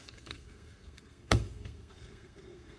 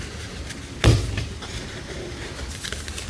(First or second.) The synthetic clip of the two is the first